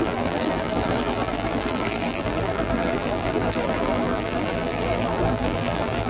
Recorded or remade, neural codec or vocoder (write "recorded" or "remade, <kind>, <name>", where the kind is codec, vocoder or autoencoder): remade, vocoder, BigVGAN v2